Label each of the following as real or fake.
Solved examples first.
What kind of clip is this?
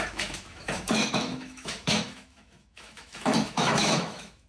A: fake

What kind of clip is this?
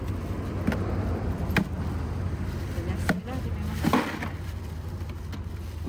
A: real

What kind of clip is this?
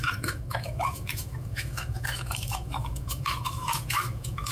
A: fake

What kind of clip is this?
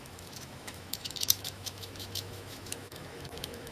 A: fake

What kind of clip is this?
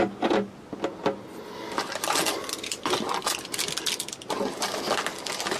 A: real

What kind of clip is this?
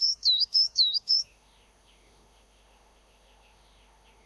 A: fake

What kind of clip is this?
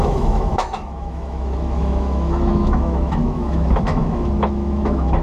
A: fake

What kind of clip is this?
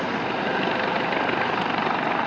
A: real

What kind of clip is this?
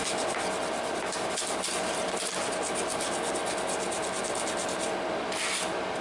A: real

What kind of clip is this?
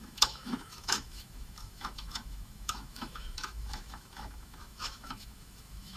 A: fake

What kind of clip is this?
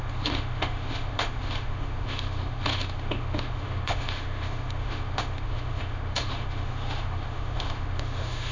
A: fake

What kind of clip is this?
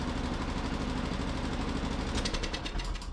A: real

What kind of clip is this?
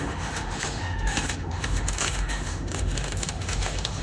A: fake